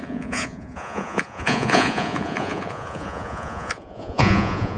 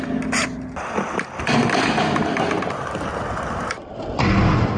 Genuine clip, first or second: second